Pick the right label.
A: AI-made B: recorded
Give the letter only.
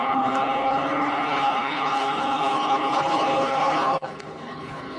A